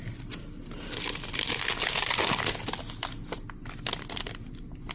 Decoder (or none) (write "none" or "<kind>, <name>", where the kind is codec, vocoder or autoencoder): none